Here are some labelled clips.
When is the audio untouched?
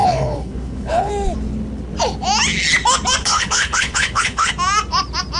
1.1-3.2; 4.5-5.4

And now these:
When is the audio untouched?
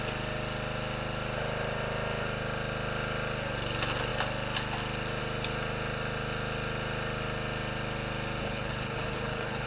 0.0-8.4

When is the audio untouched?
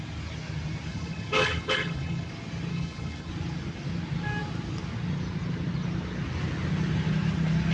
0.0-0.9; 2.3-2.7; 3.3-7.7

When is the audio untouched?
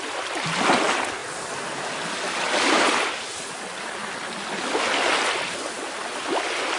0.0-6.8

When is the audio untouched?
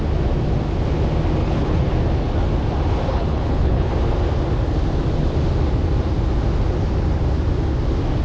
0.0-1.4; 1.9-3.1; 3.9-8.2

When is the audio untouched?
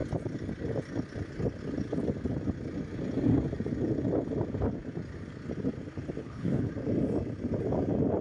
0.0-6.2; 6.7-8.2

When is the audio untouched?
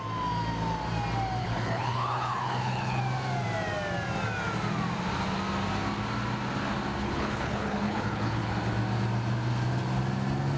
0.0-1.4; 3.0-7.0; 8.5-10.6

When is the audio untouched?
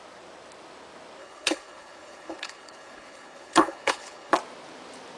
0.0-1.2; 4.3-5.2